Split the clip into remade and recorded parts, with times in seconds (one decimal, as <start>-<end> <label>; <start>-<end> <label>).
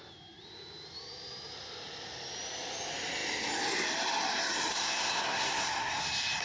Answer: 0.0-4.7 recorded; 4.7-6.0 remade; 6.0-6.4 recorded